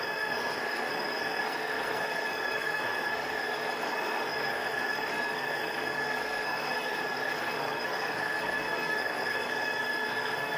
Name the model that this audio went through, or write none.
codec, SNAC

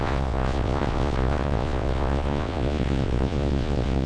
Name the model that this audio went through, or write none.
vocoder, Vocos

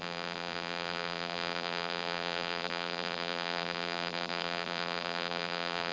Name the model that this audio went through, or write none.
vocoder, BigVGAN v2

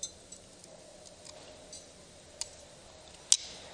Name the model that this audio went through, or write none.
none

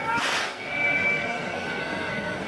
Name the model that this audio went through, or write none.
codec, SNAC